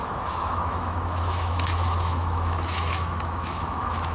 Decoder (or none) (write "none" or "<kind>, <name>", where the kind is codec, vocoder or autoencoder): autoencoder, DAC-VAE